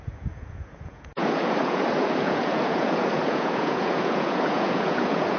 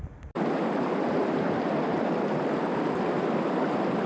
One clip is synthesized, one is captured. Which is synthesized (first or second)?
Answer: first